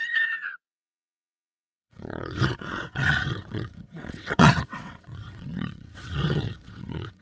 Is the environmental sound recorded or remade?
remade